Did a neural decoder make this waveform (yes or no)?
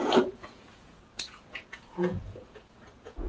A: yes